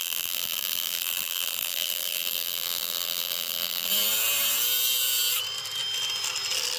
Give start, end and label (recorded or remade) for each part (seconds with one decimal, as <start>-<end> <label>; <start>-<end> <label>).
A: 0.0-3.9 remade; 3.9-6.8 recorded